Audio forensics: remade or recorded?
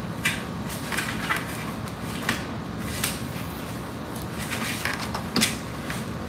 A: recorded